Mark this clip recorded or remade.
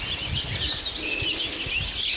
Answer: recorded